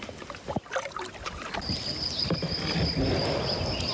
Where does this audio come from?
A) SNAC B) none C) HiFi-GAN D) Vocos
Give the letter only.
B